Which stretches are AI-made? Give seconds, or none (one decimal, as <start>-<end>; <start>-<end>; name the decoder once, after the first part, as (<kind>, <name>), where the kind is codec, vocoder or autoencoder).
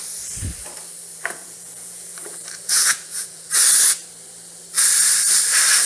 1.2-3.5 (vocoder, Vocos)